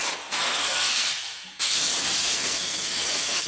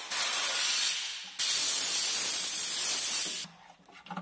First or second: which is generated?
first